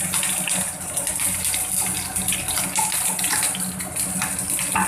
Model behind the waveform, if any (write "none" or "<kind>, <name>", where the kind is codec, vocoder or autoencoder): none